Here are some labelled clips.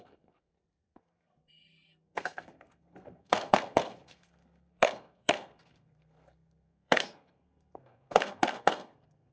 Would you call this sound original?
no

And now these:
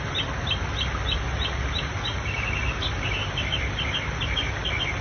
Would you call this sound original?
yes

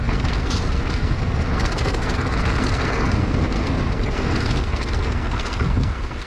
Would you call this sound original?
no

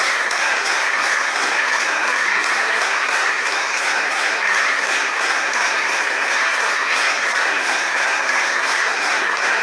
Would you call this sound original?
no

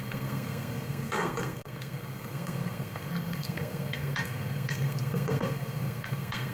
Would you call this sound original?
no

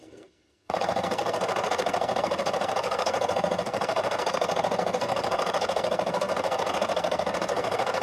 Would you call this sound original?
no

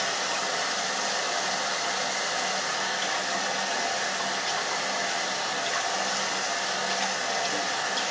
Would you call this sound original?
yes